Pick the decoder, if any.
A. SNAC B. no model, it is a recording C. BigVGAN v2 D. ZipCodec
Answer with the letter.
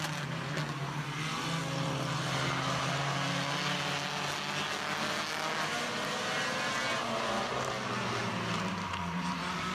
B